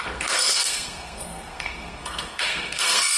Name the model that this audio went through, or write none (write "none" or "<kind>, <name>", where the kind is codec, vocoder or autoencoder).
codec, SNAC